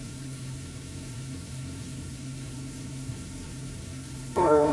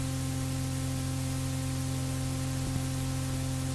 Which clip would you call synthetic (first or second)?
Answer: first